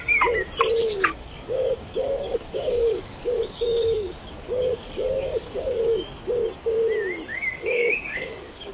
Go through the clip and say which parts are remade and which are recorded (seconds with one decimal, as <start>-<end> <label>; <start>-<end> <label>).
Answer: 0.0-0.8 recorded; 0.8-6.0 remade; 6.0-7.3 recorded; 7.3-8.7 remade